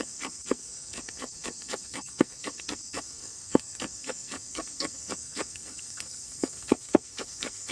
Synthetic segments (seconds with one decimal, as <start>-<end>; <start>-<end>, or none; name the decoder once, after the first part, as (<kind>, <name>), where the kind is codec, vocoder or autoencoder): 0.0-7.7 (codec, SNAC)